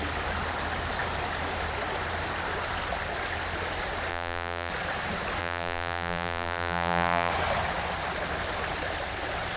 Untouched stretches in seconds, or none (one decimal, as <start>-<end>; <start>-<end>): 0.0-4.1; 4.7-5.4; 7.3-9.6